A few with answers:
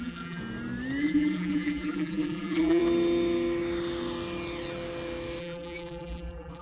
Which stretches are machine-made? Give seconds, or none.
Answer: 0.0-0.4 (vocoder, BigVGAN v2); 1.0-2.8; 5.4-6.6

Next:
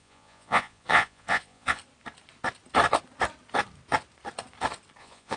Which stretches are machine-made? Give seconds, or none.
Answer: 0.0-1.8 (vocoder, Vocos); 5.0-5.4

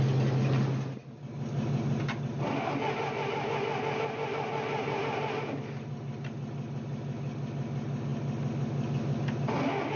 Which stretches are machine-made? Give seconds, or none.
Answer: none